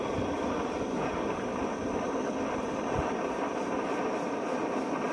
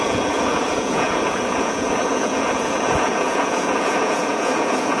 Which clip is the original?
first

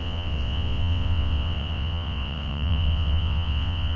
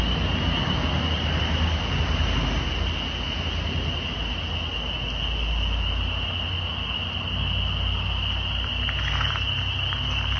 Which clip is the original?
second